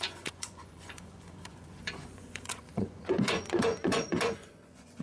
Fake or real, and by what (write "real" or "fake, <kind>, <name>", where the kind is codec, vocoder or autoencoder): fake, vocoder, Vocos